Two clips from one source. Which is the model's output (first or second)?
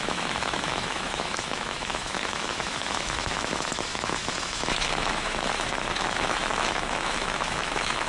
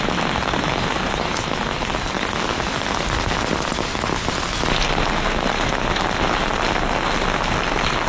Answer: first